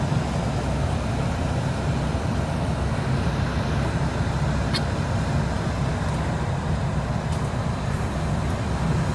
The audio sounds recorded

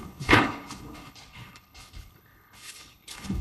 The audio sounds remade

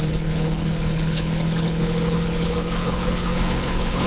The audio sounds remade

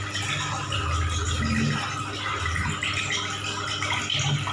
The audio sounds recorded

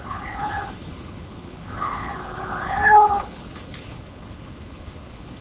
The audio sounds remade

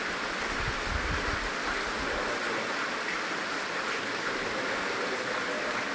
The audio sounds recorded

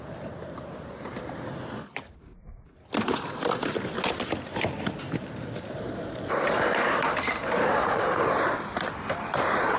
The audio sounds recorded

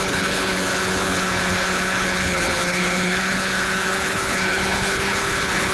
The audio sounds remade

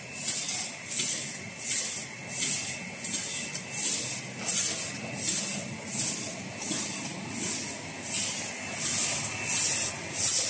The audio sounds recorded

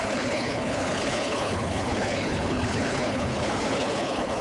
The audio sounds remade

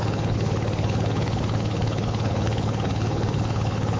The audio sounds remade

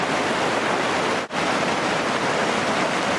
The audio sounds recorded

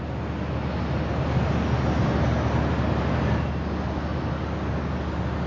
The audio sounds recorded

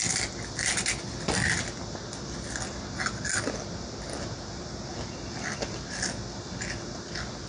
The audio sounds recorded